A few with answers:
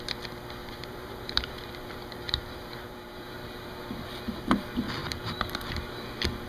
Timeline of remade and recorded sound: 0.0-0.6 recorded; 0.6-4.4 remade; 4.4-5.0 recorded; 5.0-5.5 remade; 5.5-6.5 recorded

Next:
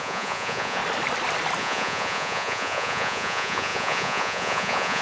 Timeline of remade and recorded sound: 0.0-0.8 remade; 0.8-1.6 recorded; 1.6-5.0 remade

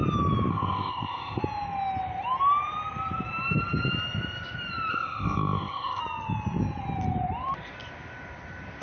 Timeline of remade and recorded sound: 0.0-0.5 recorded; 0.5-1.4 remade; 1.4-4.9 recorded; 4.9-6.0 remade; 6.0-8.8 recorded

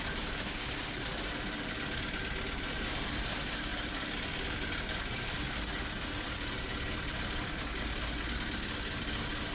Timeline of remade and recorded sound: 0.0-9.5 recorded

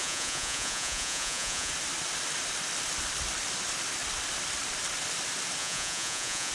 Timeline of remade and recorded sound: 0.0-1.7 remade; 1.7-5.6 recorded; 5.6-6.5 remade

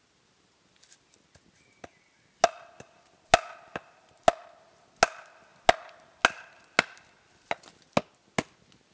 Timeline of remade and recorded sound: 0.0-8.9 recorded

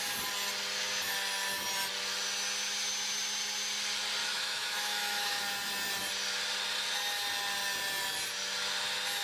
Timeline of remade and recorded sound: 0.0-4.2 recorded; 4.2-5.4 remade; 5.4-9.2 recorded

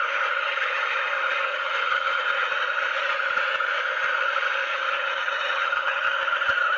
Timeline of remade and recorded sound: 0.0-1.5 recorded; 1.5-2.5 remade; 2.5-4.7 recorded; 4.7-6.2 remade; 6.2-6.8 recorded